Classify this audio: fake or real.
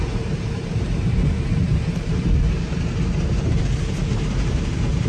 fake